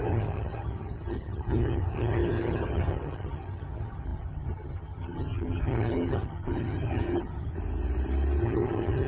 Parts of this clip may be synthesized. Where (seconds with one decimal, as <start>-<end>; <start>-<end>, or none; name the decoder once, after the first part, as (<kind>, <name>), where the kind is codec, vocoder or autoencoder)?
0.0-7.5 (vocoder, HiFi-GAN); 8.4-9.1